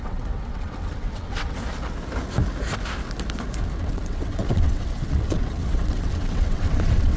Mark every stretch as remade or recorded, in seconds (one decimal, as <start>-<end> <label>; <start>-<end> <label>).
0.0-1.6 remade; 1.6-3.8 recorded; 3.8-7.2 remade